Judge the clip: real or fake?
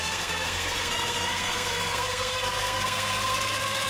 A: fake